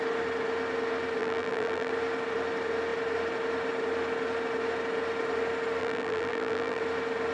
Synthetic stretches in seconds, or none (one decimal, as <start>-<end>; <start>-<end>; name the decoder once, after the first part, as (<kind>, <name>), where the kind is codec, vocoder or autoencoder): 1.2-1.9 (vocoder, BigVGAN v2); 5.8-6.8